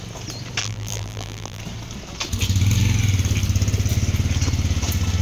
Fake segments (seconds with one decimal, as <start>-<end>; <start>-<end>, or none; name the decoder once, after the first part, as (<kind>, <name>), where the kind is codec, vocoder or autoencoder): 0.6-1.6 (vocoder, BigVGAN v2)